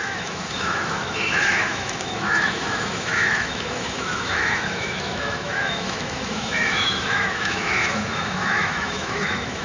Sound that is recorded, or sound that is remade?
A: remade